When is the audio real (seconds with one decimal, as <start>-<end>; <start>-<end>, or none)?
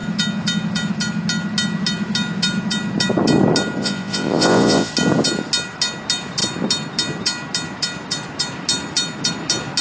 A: 0.0-3.8; 4.9-9.8